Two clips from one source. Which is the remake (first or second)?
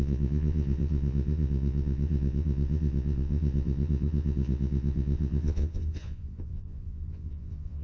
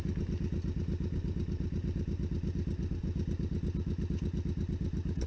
first